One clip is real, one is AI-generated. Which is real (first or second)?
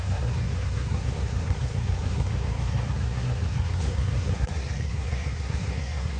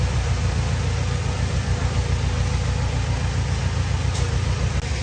second